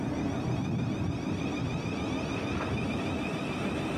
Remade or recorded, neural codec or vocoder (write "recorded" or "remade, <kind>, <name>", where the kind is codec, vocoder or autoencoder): recorded